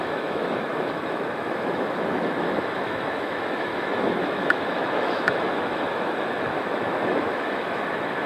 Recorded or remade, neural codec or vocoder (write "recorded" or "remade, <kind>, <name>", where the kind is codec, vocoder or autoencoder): remade, autoencoder, DAC-VAE